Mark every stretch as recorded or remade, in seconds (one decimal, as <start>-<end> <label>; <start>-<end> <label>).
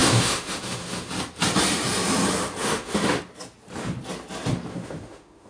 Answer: 0.0-1.1 remade; 1.1-2.6 recorded; 2.6-3.2 remade; 3.2-4.7 recorded; 4.7-5.5 remade